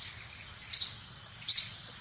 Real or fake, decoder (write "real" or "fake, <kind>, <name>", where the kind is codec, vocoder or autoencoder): real